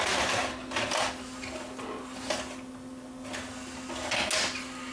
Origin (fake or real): real